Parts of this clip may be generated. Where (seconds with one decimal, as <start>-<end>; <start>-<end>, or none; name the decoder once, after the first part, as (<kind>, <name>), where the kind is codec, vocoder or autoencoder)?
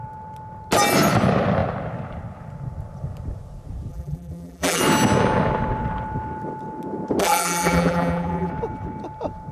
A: 3.9-4.8 (vocoder, BigVGAN v2); 7.2-8.5